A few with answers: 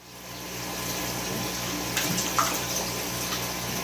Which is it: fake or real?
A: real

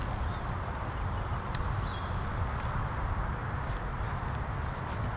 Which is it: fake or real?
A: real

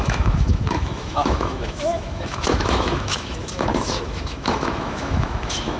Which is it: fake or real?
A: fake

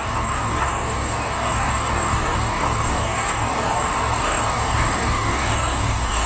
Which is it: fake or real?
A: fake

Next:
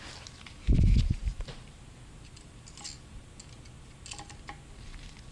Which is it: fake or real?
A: real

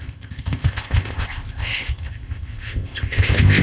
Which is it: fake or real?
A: fake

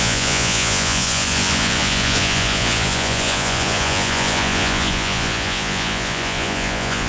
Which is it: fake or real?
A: fake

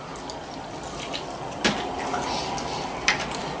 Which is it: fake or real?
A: real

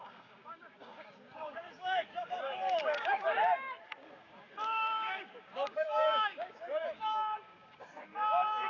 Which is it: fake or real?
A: fake